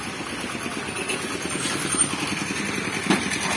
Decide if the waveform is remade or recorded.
recorded